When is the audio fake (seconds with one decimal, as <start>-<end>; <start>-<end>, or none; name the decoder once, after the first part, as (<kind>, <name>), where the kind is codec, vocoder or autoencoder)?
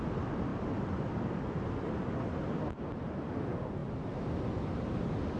none